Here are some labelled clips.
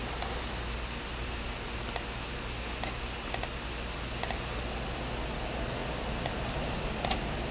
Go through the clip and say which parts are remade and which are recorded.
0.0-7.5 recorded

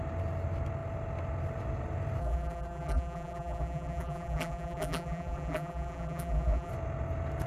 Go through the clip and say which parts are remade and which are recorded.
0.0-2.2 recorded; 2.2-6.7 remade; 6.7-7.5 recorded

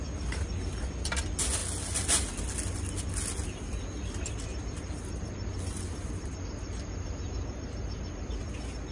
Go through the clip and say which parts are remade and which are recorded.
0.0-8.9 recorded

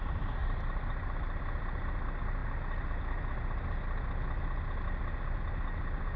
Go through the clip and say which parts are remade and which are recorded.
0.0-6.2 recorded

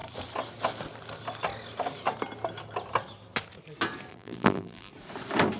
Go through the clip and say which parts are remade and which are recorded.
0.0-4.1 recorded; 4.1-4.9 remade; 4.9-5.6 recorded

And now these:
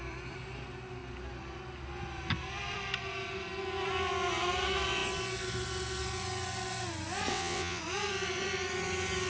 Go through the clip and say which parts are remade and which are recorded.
0.0-7.3 recorded; 7.3-7.8 remade; 7.8-9.3 recorded